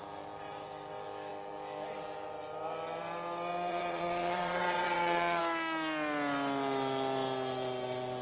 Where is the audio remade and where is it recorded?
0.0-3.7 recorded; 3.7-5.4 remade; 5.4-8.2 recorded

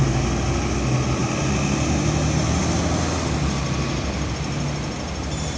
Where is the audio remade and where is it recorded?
0.0-5.6 recorded

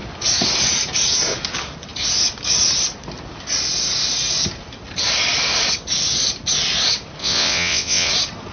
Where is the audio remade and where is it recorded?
0.0-7.2 recorded; 7.2-8.1 remade; 8.1-8.5 recorded

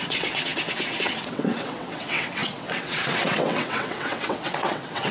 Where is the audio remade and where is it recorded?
0.0-5.1 remade

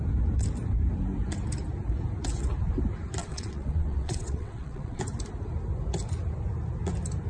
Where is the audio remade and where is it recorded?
0.0-3.2 recorded; 3.2-5.0 remade; 5.0-7.3 recorded